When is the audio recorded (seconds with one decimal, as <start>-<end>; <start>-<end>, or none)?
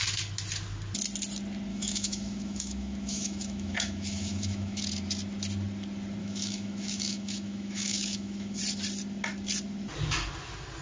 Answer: 0.0-1.7; 4.8-6.2; 8.6-10.8